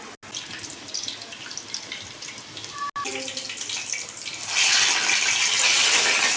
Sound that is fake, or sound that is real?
real